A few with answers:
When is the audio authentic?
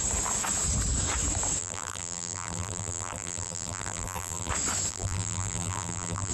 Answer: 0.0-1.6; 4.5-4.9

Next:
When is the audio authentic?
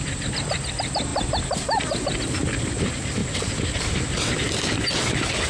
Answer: 0.0-5.5